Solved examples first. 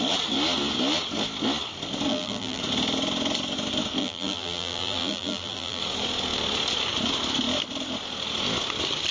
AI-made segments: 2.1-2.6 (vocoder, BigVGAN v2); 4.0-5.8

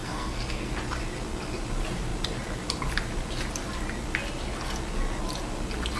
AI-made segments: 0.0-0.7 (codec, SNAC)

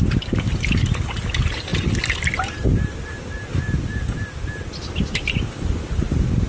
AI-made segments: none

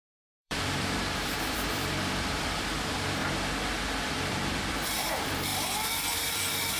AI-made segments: 0.0-3.2 (vocoder, BigVGAN v2); 4.3-6.8

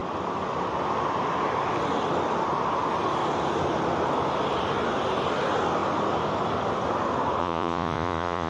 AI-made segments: 7.4-8.5 (vocoder, Vocos)

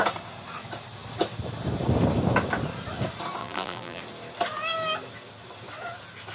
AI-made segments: 3.4-4.0 (vocoder, BigVGAN v2)

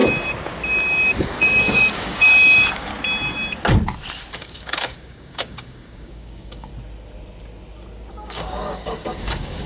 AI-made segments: 1.2-2.9 (codec, DAC); 4.3-6.7; 8.1-9.7